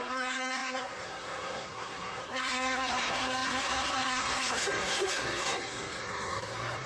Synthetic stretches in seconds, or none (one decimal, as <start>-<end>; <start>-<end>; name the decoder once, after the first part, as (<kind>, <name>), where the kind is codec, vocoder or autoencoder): 0.0-6.9 (codec, SNAC)